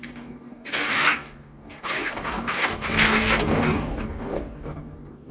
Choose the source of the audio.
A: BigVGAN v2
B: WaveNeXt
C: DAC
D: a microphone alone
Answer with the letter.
C